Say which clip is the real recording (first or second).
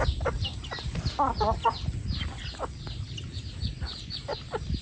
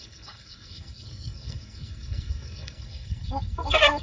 first